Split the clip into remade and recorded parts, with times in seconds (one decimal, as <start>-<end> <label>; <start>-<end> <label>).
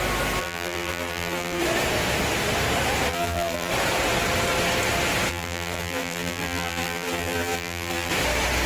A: 0.0-0.4 recorded; 0.4-1.6 remade; 1.6-3.1 recorded; 3.1-3.7 remade; 3.7-5.3 recorded; 5.3-8.1 remade; 8.1-8.7 recorded